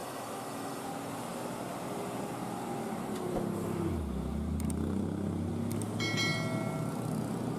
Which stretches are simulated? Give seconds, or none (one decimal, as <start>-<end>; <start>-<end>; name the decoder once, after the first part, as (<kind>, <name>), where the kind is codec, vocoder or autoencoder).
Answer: 0.0-0.8 (autoencoder, DAC-VAE)